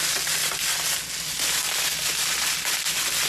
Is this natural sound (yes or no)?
yes